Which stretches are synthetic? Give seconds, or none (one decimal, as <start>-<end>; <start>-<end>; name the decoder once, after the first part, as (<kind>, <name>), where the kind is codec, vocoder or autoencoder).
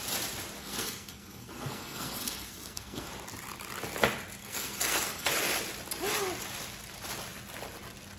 0.6-3.1 (codec, SNAC); 4.4-5.3